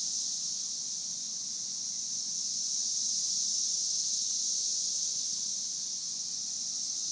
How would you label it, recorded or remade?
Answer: remade